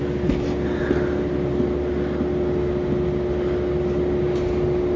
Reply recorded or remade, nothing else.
recorded